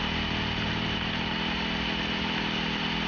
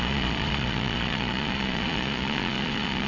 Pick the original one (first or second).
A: first